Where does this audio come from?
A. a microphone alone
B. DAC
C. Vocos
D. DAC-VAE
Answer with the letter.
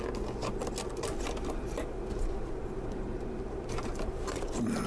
A